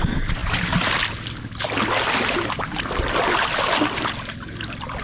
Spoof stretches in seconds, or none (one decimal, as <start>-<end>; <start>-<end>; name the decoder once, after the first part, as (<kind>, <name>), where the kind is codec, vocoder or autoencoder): none